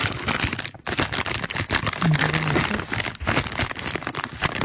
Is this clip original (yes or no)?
yes